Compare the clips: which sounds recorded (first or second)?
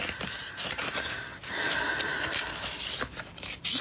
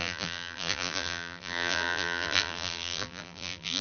first